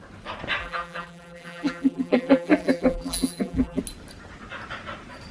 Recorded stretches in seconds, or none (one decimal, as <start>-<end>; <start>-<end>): 0.0-0.6; 3.8-5.3